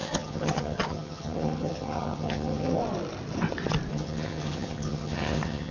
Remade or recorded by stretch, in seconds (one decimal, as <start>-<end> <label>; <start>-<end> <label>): 0.0-2.8 remade; 2.8-3.9 recorded; 3.9-5.7 remade